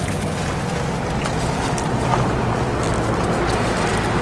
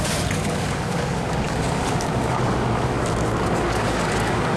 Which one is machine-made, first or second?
second